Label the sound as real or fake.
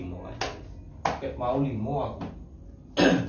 real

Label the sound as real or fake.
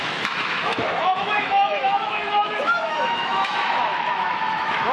fake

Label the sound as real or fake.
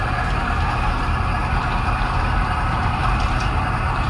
fake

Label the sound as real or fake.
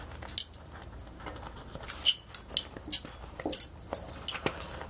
real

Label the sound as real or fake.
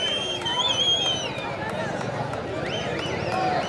real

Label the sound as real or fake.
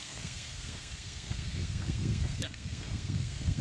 fake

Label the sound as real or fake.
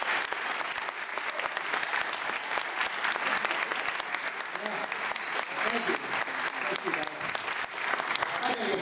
real